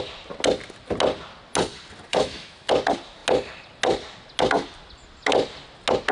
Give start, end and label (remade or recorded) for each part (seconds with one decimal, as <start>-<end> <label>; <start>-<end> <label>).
0.0-2.1 recorded; 2.1-2.7 remade; 2.7-6.1 recorded